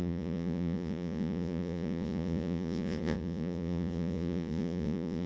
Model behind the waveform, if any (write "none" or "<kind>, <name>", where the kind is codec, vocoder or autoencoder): vocoder, Vocos